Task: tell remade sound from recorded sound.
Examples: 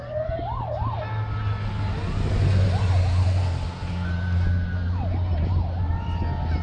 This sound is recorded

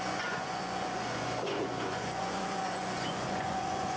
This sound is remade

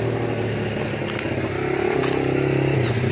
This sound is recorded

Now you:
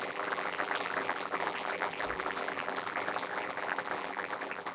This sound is remade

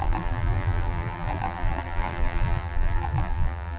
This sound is remade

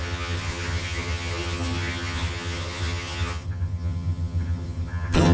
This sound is remade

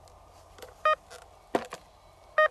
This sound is recorded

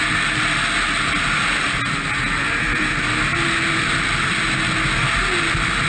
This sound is recorded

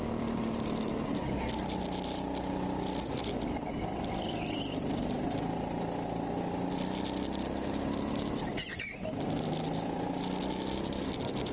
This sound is recorded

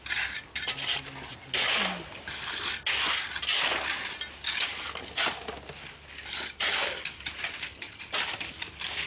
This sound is recorded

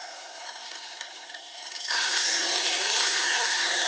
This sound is remade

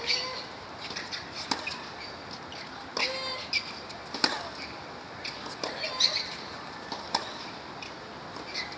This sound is recorded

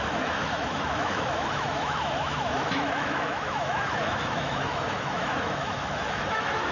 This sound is remade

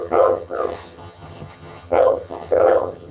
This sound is remade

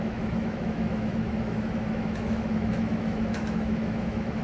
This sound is remade